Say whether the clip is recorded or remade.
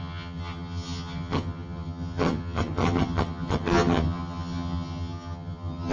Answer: remade